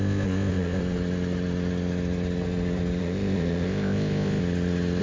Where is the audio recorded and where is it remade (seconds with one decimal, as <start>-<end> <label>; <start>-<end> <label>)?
0.0-0.8 remade; 0.8-3.0 recorded; 3.0-4.4 remade; 4.4-5.0 recorded